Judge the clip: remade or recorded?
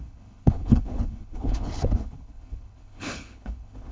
remade